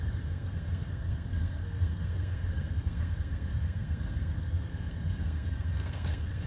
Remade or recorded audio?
remade